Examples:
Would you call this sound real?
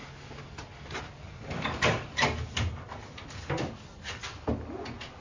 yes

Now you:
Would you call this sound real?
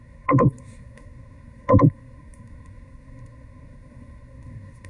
no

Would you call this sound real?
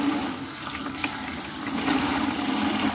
no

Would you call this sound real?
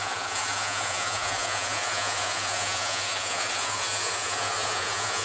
no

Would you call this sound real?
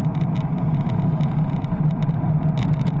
yes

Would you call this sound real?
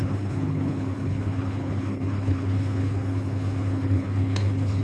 no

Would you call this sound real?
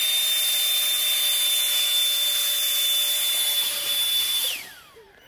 yes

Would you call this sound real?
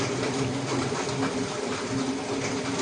yes